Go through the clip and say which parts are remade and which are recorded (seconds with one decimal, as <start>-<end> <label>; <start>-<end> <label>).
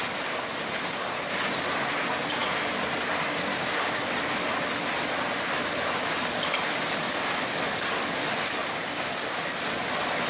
0.0-10.3 recorded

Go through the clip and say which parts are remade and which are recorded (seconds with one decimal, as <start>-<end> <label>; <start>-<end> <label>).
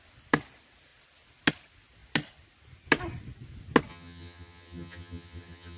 0.0-3.9 recorded; 3.9-5.8 remade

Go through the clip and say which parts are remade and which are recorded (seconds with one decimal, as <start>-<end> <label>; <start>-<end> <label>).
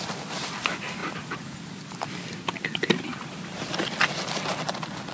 0.0-5.1 recorded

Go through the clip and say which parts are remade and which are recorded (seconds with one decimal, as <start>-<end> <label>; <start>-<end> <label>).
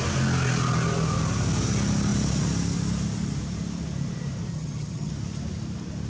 0.0-4.5 recorded; 4.5-5.1 remade; 5.1-6.1 recorded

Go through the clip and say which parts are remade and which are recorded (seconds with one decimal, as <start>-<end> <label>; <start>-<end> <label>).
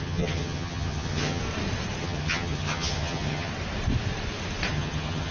0.0-1.4 remade; 1.4-2.0 recorded; 2.0-3.5 remade; 3.5-4.7 recorded; 4.7-5.3 remade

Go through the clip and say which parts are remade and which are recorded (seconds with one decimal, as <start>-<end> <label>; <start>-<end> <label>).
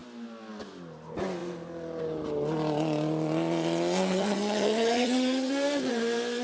0.0-4.1 recorded; 4.1-5.5 remade; 5.5-6.4 recorded